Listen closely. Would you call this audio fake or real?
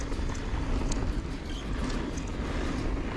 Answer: real